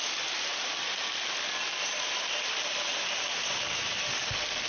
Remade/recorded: recorded